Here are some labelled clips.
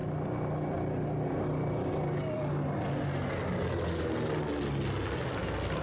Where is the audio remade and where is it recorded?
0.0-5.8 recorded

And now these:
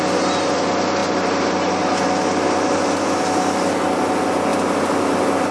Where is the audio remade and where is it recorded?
0.0-5.5 recorded

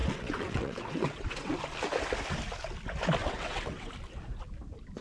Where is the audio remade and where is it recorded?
0.0-1.5 remade; 1.5-3.2 recorded; 3.2-3.9 remade; 3.9-5.0 recorded

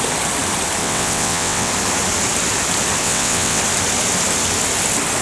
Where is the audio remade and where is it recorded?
0.0-0.8 recorded; 0.8-1.7 remade; 1.7-3.0 recorded; 3.0-3.6 remade; 3.6-5.2 recorded

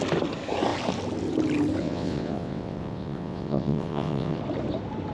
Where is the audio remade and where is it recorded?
0.0-1.8 recorded; 1.8-4.4 remade; 4.4-5.1 recorded

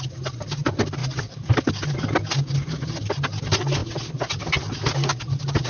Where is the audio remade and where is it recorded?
0.0-5.7 recorded